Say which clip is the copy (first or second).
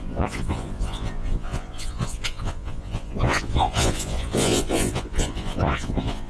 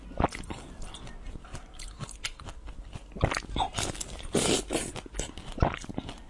first